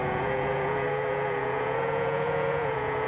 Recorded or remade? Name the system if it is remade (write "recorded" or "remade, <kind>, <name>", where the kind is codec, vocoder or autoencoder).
remade, vocoder, Vocos